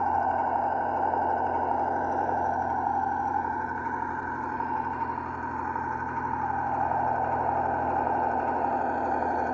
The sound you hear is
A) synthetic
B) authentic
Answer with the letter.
B